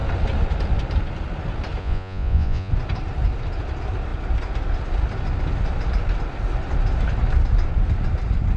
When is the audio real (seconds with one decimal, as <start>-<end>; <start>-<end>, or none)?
0.0-1.8; 2.7-8.6